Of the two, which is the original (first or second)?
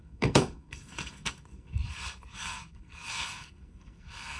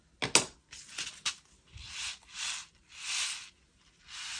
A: second